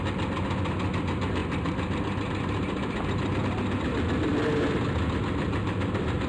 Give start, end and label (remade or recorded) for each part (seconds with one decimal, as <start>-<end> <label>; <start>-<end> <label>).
0.0-4.3 recorded; 4.3-6.3 remade